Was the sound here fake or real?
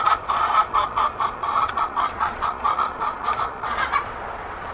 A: fake